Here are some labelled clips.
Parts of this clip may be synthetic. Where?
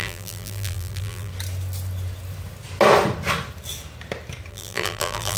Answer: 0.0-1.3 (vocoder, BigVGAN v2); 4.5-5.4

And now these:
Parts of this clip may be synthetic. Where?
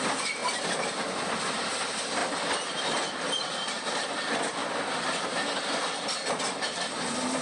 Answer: 0.0-2.2 (vocoder, BigVGAN v2); 4.0-4.6; 6.1-7.4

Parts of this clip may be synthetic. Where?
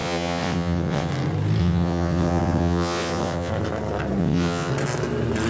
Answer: 0.0-1.1 (vocoder, WaveNeXt); 1.6-3.5; 4.2-4.7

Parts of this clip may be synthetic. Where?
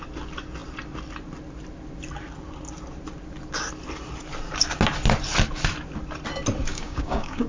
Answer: 6.7-7.5 (codec, DAC)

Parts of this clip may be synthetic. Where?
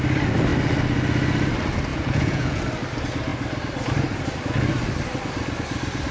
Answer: 1.9-2.6 (vocoder, Vocos)